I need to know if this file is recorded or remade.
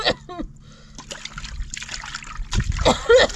recorded